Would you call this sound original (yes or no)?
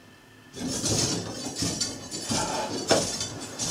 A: yes